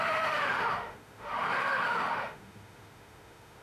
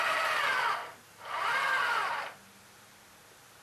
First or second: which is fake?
first